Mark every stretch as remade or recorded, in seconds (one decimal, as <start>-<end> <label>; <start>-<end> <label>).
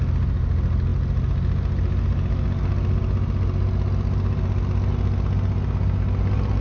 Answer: 0.0-6.6 recorded